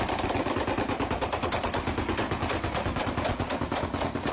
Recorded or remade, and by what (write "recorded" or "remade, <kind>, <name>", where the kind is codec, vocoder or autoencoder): recorded